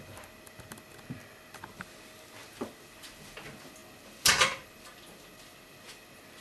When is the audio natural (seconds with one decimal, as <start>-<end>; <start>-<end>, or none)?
0.0-6.4